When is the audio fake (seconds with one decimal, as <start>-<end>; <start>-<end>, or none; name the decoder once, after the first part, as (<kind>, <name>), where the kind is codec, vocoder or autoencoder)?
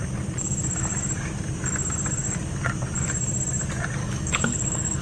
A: 4.0-5.0 (codec, DAC)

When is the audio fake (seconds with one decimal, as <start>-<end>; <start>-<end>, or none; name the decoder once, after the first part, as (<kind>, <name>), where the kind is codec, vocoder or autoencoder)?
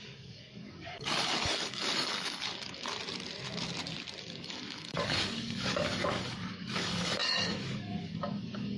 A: 0.0-2.9 (codec, DAC); 4.2-8.8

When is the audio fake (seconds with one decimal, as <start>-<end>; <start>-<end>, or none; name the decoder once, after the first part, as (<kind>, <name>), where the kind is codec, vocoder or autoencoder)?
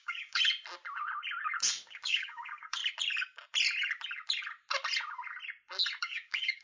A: 0.0-0.4 (codec, DAC); 1.8-2.8; 6.0-6.6